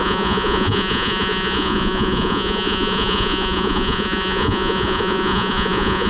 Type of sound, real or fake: fake